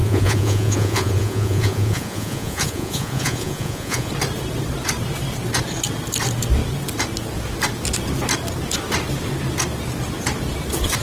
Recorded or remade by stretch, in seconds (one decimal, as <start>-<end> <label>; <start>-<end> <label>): 0.0-4.1 remade; 4.1-11.0 recorded